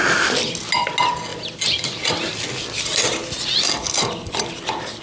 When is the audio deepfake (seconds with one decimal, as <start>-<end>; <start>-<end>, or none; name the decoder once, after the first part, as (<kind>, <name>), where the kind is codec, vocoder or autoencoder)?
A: none